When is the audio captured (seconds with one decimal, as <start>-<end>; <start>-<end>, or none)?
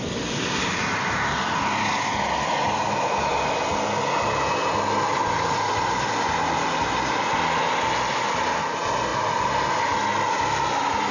0.0-11.1